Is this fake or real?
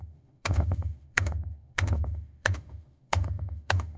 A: fake